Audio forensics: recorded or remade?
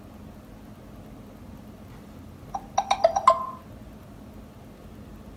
recorded